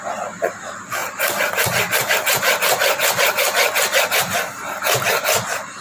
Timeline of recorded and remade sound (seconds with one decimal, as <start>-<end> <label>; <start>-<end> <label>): 0.0-5.8 recorded